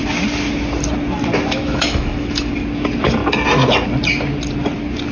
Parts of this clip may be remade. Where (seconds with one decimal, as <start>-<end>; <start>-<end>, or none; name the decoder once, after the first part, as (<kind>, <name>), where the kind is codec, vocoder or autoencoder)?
1.6-2.5 (autoencoder, DAC-VAE)